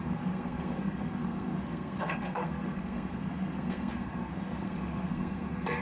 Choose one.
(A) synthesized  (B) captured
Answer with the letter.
A